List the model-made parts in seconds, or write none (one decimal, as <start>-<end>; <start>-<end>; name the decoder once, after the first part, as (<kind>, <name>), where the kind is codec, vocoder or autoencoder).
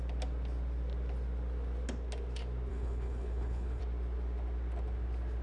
2.7-3.8 (codec, HILCodec)